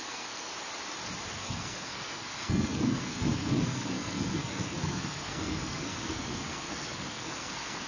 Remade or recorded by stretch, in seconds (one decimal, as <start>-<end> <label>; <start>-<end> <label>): 0.0-0.5 remade; 0.5-1.3 recorded; 1.3-7.9 remade

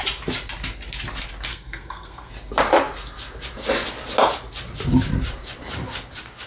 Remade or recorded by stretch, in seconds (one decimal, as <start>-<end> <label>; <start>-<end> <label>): 0.0-1.5 recorded; 1.5-2.3 remade; 2.3-6.5 recorded